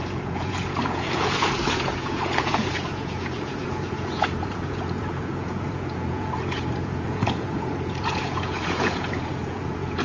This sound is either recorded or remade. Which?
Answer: remade